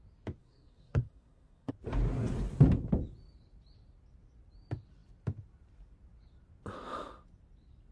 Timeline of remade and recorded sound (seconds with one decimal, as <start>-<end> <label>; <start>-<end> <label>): 0.0-0.4 recorded; 0.4-1.7 remade; 1.7-7.9 recorded